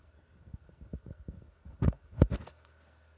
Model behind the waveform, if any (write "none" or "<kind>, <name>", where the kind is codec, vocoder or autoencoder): codec, SNAC